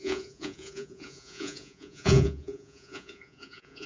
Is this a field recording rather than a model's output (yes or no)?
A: no